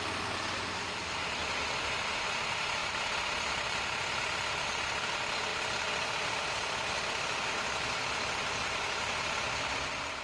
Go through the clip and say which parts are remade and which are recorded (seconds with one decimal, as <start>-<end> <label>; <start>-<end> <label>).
0.0-1.4 recorded; 1.4-2.1 remade; 2.1-2.8 recorded; 2.8-3.6 remade; 3.6-5.5 recorded; 5.5-6.5 remade; 6.5-10.2 recorded